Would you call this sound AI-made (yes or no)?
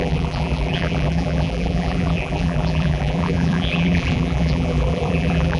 yes